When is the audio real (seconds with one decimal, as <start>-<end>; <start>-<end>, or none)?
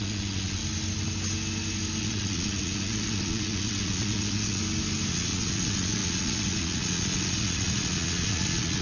0.6-2.0; 4.6-5.1